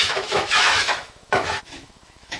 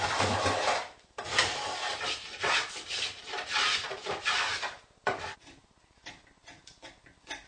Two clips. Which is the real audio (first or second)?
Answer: second